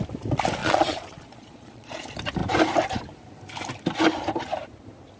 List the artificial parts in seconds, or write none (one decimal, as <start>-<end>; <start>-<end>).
0.6-2.0